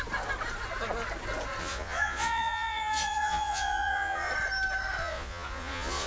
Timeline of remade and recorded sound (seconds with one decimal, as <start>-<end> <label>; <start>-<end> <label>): 0.0-1.6 recorded; 1.6-4.3 remade; 4.3-5.0 recorded; 5.0-6.1 remade